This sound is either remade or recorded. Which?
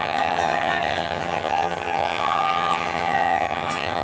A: remade